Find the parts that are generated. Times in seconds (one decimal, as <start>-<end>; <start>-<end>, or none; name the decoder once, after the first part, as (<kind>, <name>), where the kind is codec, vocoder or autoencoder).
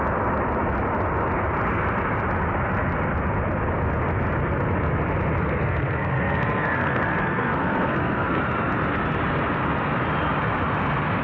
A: 5.4-8.4 (codec, SNAC)